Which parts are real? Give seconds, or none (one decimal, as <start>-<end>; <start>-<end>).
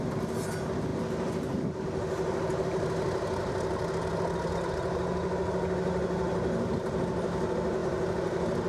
0.0-8.7